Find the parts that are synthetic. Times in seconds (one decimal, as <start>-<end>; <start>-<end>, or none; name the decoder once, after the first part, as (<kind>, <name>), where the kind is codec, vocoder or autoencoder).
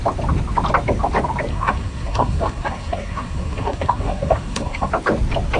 1.5-4.9 (codec, SNAC)